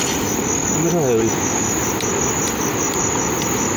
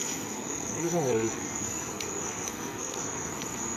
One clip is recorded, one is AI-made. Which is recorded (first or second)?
first